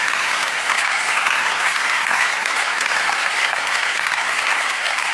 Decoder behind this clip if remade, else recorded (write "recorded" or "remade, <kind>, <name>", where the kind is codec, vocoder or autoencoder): remade, codec, SNAC